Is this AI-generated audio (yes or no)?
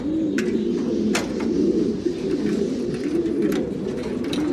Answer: no